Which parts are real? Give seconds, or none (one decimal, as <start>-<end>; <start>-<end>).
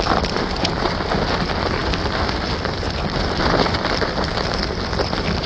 0.0-5.5